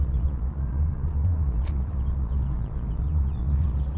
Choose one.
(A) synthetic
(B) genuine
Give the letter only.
A